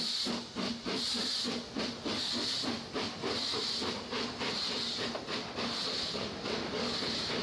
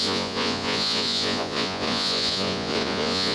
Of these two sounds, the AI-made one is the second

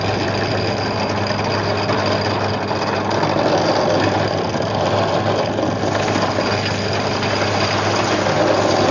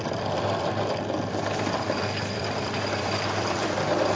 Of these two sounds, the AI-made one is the second